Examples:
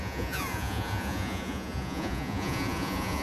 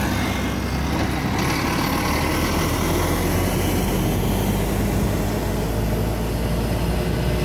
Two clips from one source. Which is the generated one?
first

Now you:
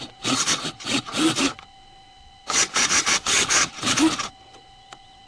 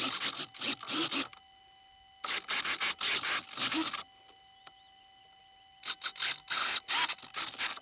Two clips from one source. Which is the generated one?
first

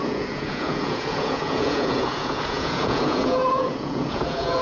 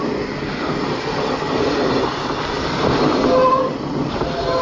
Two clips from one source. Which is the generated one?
first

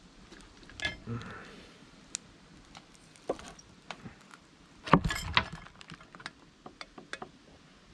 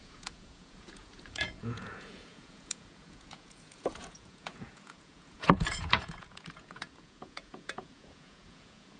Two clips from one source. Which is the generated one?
second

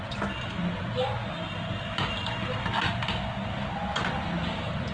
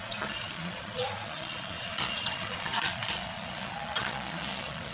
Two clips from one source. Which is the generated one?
second